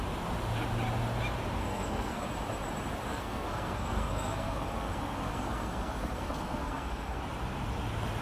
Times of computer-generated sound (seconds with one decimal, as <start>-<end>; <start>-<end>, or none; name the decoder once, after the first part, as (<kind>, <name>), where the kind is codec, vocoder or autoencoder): 1.6-2.2 (codec, SNAC); 3.1-7.2